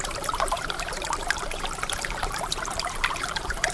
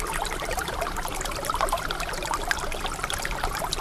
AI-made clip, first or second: first